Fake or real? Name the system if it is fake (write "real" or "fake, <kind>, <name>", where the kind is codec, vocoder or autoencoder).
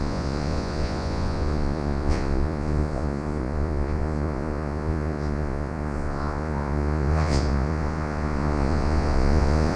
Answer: fake, vocoder, Vocos